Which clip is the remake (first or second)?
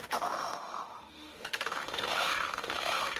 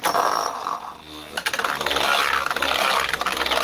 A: first